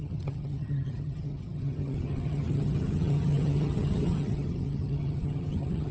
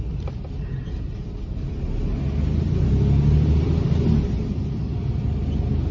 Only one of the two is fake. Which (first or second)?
first